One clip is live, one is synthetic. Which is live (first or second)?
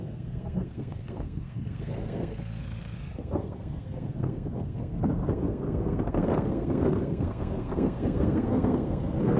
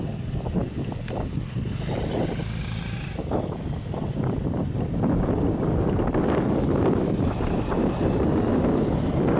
second